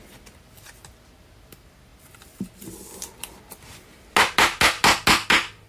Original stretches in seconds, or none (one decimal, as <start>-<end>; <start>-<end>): 0.0-5.7